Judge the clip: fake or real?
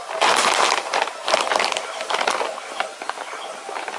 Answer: real